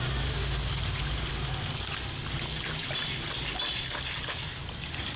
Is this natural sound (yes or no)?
yes